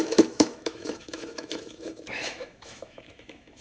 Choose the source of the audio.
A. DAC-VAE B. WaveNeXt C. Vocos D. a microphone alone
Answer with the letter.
A